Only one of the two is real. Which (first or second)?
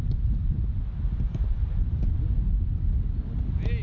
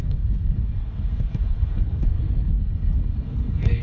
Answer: first